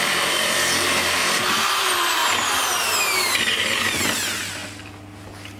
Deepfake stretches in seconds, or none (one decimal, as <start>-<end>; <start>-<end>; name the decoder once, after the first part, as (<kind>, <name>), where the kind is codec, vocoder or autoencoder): 0.0-2.2 (vocoder, BigVGAN v2); 3.4-4.6